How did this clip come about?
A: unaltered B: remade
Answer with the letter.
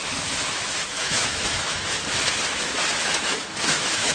B